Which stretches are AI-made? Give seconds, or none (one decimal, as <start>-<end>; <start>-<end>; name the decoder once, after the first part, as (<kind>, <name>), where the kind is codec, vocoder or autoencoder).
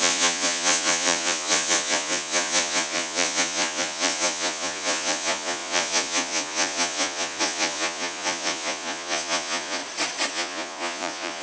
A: 0.0-9.8 (vocoder, Vocos); 10.3-11.4